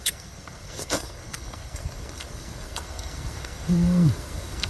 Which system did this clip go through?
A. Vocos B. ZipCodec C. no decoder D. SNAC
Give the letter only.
D